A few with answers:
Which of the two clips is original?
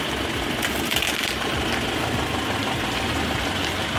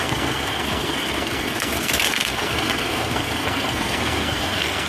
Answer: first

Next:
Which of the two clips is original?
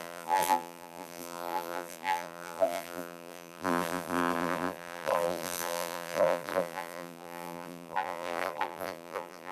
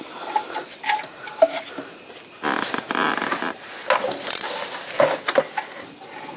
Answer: second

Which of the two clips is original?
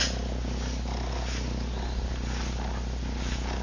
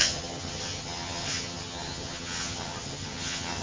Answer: first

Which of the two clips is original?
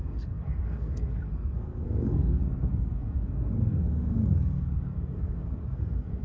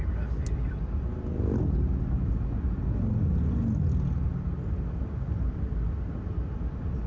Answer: second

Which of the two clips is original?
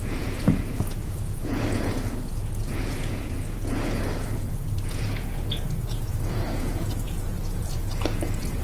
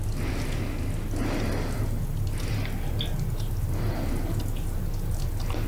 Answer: second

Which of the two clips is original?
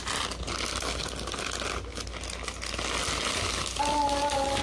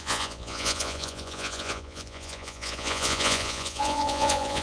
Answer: first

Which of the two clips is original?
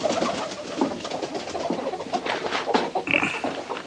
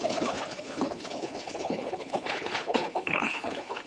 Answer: first